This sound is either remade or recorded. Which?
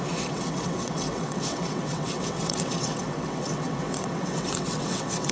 remade